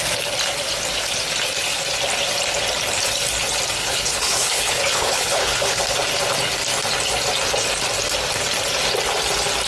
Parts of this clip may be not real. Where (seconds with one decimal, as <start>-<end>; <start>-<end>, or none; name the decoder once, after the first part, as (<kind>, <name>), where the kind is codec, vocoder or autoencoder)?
3.8-5.8 (codec, HILCodec)